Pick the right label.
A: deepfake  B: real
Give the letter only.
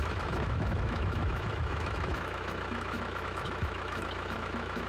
A